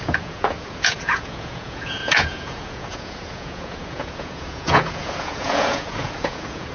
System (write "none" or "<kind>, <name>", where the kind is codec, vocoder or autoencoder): vocoder, Vocos